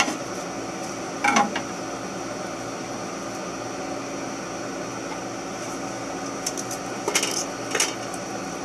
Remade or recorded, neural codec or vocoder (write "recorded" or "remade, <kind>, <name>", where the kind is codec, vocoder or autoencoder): recorded